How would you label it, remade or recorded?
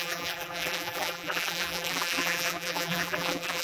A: remade